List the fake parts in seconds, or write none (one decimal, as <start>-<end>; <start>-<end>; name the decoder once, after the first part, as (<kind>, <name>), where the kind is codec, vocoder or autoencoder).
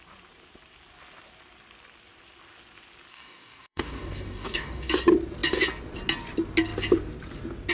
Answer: 3.1-4.9 (codec, DAC)